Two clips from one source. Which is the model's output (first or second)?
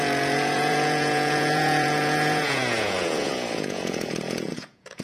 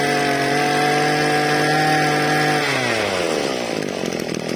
first